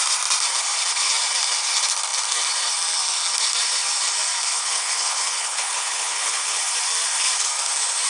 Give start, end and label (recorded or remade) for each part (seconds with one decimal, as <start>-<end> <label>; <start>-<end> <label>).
0.0-4.6 recorded; 4.6-6.6 remade; 6.6-8.1 recorded